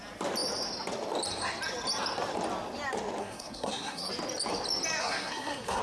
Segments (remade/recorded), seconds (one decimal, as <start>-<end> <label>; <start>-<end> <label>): 0.0-3.2 recorded; 3.2-4.1 remade; 4.1-5.0 recorded; 5.0-5.8 remade